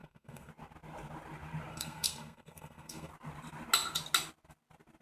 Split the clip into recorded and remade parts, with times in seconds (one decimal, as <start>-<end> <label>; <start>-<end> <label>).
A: 0.0-0.5 remade; 0.5-1.7 recorded; 1.7-3.1 remade; 3.1-5.0 recorded